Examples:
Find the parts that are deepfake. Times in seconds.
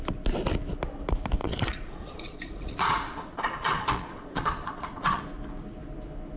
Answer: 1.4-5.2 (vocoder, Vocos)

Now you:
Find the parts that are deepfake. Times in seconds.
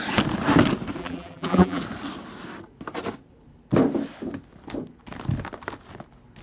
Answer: 1.0-1.8 (vocoder, BigVGAN v2)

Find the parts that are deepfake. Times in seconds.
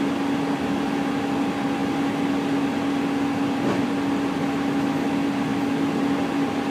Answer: none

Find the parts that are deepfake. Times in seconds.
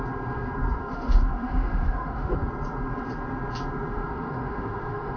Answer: 0.8-2.3 (autoencoder, DAC-VAE); 3.9-5.2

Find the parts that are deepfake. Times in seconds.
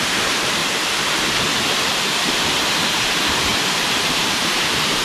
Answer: 0.0-0.6 (vocoder, BigVGAN v2); 2.6-5.0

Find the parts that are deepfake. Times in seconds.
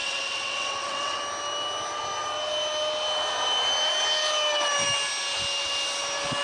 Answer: 0.0-1.2 (vocoder, WaveNeXt)